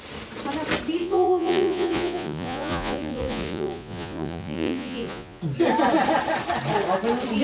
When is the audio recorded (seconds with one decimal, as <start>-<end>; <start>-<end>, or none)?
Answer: 0.0-1.0; 5.4-7.4